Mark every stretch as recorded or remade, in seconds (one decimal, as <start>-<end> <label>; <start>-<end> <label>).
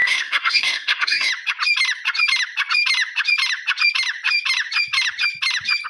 0.0-1.3 remade; 1.3-5.9 recorded